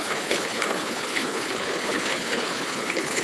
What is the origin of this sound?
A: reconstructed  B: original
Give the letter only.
A